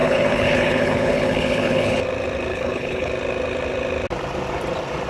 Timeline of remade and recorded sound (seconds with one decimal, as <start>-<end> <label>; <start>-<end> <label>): 0.0-2.0 remade; 2.0-2.5 recorded; 2.5-3.1 remade; 3.1-5.1 recorded